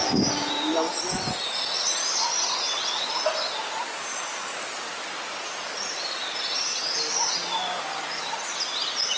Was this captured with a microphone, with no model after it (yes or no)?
yes